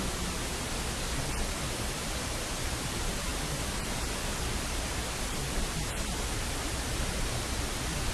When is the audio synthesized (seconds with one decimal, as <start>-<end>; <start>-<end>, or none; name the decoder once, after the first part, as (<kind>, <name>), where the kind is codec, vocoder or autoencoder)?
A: none